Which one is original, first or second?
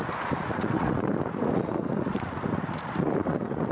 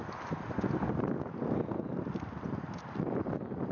second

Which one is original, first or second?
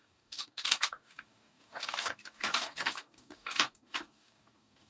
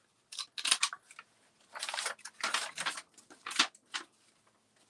second